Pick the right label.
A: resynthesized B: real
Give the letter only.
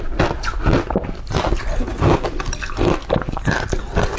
B